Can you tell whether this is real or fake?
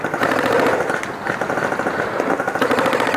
real